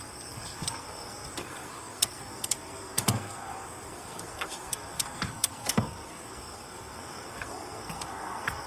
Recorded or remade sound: remade